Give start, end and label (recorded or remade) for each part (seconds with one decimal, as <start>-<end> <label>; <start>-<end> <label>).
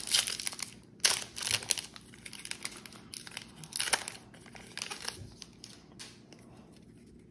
0.0-5.2 recorded; 5.2-6.0 remade; 6.0-7.3 recorded